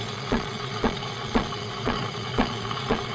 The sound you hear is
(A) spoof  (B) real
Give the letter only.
A